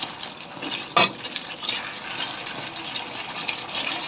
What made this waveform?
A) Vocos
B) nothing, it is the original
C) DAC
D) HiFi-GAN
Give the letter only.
B